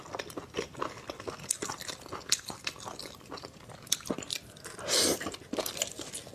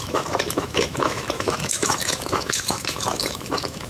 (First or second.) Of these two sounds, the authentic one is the first